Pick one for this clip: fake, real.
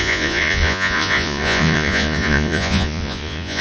fake